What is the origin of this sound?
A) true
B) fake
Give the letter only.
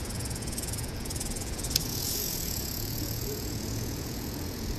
B